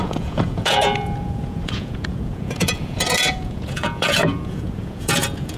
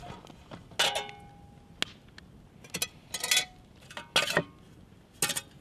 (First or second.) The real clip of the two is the second